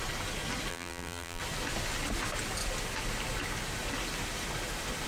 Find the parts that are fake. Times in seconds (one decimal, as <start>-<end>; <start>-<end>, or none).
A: 0.7-1.4